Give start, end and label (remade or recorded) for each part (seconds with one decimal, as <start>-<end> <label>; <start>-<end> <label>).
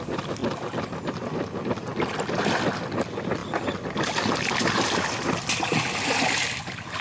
0.0-7.0 recorded